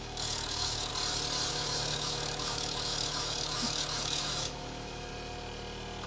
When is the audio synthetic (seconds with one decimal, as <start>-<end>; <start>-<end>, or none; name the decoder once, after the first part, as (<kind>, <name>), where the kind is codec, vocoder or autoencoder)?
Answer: 0.0-0.9 (autoencoder, DAC-VAE); 1.5-5.1